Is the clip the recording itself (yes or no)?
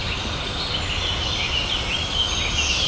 yes